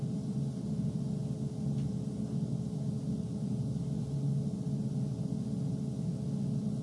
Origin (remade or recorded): recorded